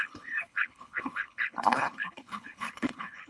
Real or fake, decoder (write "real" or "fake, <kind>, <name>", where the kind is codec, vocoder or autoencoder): fake, codec, HILCodec